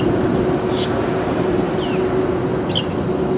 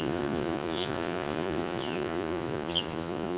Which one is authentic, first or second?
first